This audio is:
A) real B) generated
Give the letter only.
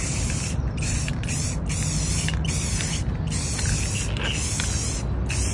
A